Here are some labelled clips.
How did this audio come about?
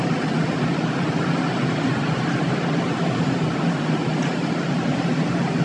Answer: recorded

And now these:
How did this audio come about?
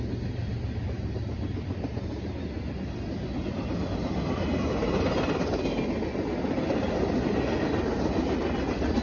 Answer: recorded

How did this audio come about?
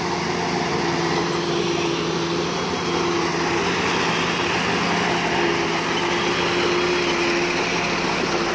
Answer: recorded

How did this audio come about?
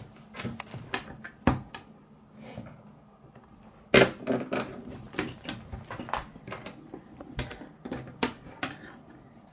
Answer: recorded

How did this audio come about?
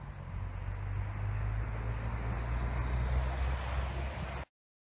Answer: recorded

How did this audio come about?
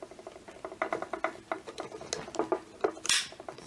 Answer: recorded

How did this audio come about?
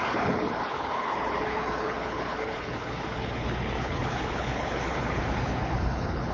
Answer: remade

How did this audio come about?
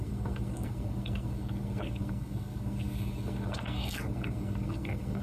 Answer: remade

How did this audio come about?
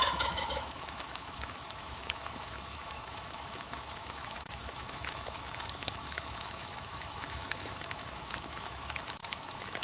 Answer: remade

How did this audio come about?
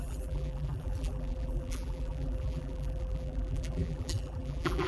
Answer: remade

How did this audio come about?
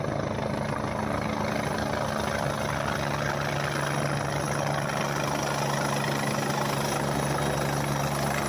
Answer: recorded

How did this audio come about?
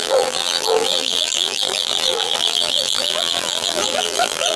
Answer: remade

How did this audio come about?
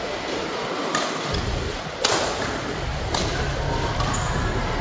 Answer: recorded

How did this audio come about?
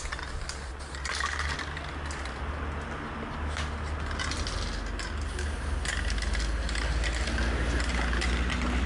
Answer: recorded